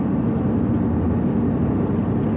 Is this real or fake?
real